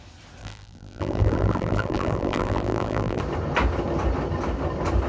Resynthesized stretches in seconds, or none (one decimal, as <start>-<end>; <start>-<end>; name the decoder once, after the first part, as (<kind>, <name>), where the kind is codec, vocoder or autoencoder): 0.4-3.2 (vocoder, BigVGAN v2)